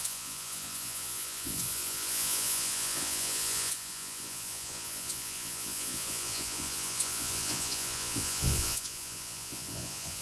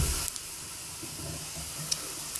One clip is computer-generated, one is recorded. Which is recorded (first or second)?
second